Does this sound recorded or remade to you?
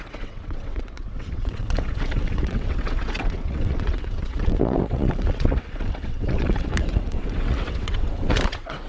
remade